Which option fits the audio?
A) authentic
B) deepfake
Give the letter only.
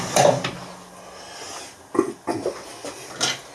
A